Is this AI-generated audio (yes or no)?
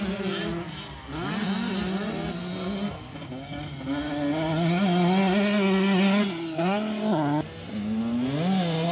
no